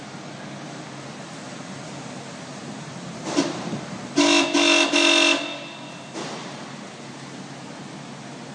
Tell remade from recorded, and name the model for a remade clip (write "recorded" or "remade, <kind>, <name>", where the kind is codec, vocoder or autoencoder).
recorded